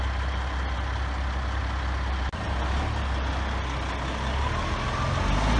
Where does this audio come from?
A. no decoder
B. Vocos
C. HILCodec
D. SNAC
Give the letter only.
A